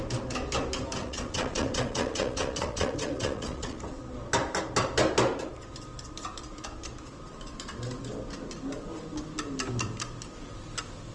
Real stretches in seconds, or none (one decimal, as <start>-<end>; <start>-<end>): 0.0-1.0; 3.8-11.1

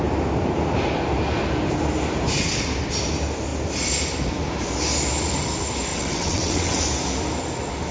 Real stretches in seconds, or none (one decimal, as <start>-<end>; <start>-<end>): 0.0-5.9; 6.8-7.9

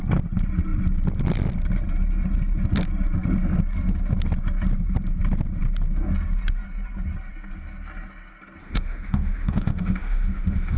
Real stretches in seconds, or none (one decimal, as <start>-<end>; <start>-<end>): 0.0-8.6